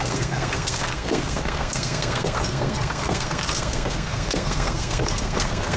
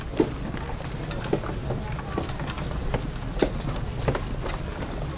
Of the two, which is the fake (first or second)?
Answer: first